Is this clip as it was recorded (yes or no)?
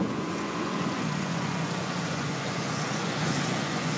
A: no